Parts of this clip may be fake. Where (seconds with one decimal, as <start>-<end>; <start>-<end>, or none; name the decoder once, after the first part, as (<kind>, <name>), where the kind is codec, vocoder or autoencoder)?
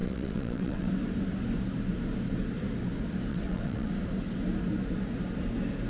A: 0.0-0.9 (vocoder, WaveNeXt); 3.3-3.9